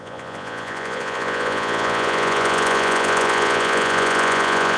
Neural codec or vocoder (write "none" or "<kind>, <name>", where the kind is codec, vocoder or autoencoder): vocoder, Vocos